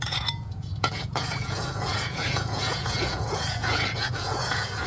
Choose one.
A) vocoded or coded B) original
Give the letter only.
A